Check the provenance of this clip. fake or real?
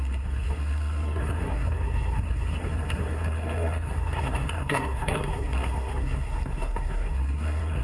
fake